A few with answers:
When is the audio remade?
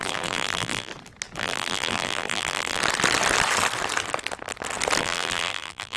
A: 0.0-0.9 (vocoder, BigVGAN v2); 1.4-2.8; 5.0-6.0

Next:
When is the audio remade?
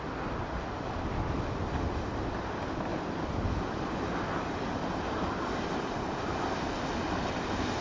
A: 2.9-6.3 (vocoder, BigVGAN v2)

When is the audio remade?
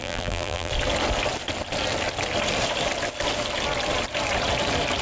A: 0.0-0.7 (vocoder, BigVGAN v2)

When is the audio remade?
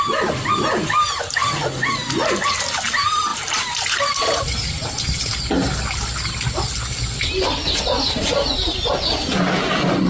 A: 3.3-5.2 (vocoder, BigVGAN v2)